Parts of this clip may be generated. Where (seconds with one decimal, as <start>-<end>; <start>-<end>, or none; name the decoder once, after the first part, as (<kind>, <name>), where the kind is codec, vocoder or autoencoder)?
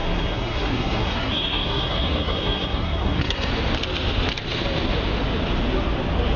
0.0-3.5 (codec, SNAC)